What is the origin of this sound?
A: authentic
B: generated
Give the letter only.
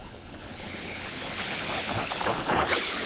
B